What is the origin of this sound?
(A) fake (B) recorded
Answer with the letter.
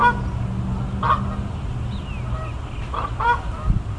B